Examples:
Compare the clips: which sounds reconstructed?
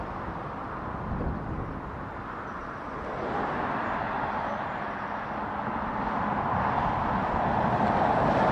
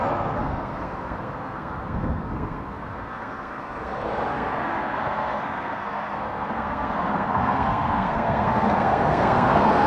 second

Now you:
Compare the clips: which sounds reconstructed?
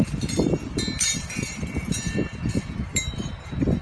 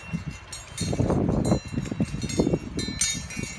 first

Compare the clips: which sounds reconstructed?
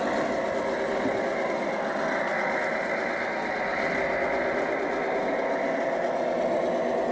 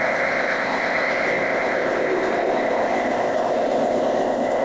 second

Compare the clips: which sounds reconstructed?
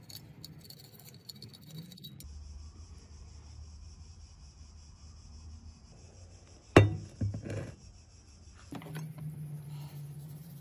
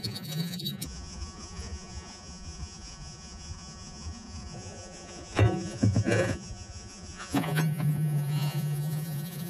second